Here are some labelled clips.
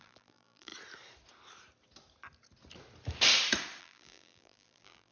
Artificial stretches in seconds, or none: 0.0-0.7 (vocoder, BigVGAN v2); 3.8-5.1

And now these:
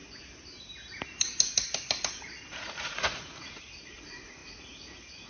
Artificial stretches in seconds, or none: 2.2-5.3 (vocoder, Vocos)

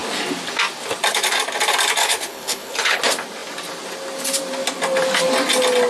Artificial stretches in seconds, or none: 2.0-3.0 (codec, HILCodec)

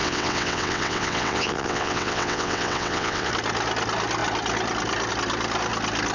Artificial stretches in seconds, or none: 0.0-3.3 (vocoder, WaveNeXt)

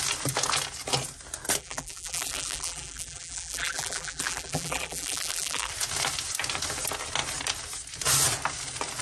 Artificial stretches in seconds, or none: 1.6-5.7 (vocoder, BigVGAN v2)

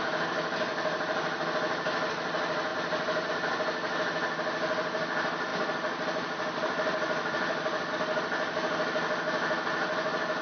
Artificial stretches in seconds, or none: 0.7-1.4 (vocoder, BigVGAN v2); 2.7-3.3; 5.5-7.9

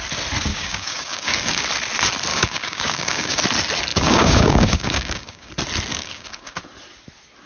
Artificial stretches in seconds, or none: 0.5-1.6 (codec, DAC); 2.3-3.4; 3.9-5.5; 5.9-6.6

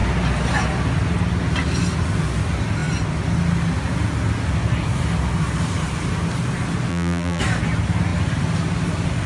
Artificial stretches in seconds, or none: 6.9-7.4 (vocoder, BigVGAN v2)